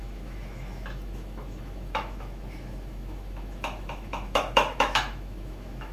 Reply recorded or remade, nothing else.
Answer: remade